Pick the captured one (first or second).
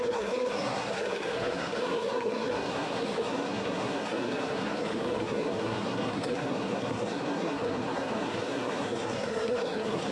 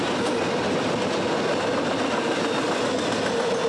second